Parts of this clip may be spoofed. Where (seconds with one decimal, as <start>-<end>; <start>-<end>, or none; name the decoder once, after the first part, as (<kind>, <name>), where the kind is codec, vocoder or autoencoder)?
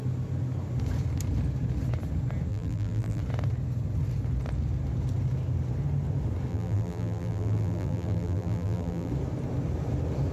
2.5-3.2 (vocoder, BigVGAN v2); 6.5-9.1